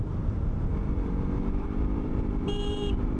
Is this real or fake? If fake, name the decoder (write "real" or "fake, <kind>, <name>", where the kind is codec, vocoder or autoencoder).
fake, vocoder, BigVGAN v2